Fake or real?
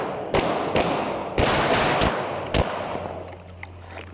real